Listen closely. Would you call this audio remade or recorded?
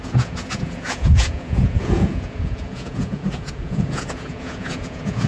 remade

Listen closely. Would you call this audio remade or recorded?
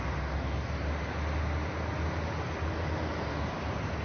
recorded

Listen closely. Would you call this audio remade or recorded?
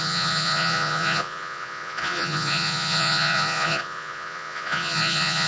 remade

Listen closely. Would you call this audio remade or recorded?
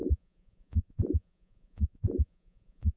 remade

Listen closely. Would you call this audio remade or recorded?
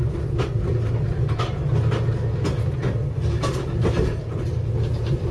recorded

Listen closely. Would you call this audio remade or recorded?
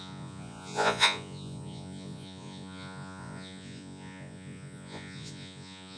remade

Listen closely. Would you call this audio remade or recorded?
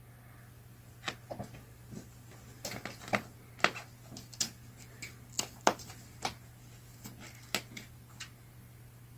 recorded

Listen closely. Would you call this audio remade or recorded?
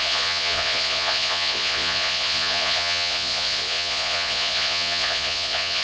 remade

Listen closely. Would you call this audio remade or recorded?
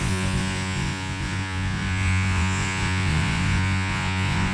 remade